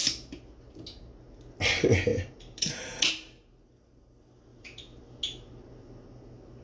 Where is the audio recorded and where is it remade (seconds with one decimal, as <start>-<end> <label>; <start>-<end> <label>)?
0.0-2.1 recorded; 2.1-3.1 remade; 3.1-4.5 recorded; 4.5-5.0 remade; 5.0-6.6 recorded

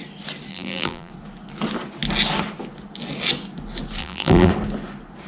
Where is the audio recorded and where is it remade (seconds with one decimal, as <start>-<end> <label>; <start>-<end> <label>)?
0.0-0.5 recorded; 0.5-1.1 remade; 1.1-4.0 recorded; 4.0-4.5 remade; 4.5-5.3 recorded

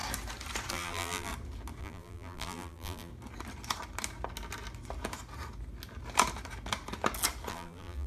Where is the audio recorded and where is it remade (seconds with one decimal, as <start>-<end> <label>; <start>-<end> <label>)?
0.0-0.7 recorded; 0.7-1.3 remade; 1.3-1.8 recorded; 1.8-3.1 remade; 3.1-7.5 recorded; 7.5-8.1 remade

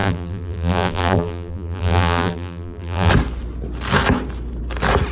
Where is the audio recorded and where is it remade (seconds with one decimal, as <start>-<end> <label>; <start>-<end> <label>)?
0.0-3.1 remade; 3.1-5.1 recorded

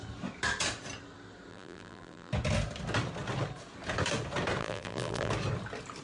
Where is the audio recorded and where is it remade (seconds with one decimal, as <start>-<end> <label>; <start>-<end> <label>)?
0.0-1.5 recorded; 1.5-2.3 remade; 2.3-4.6 recorded; 4.6-5.3 remade; 5.3-6.0 recorded

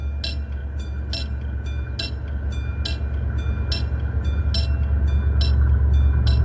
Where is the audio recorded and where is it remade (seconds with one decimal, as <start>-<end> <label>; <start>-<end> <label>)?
0.0-6.4 recorded